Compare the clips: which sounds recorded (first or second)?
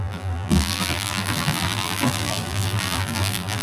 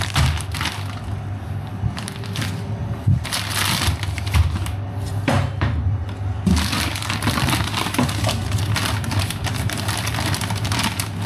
second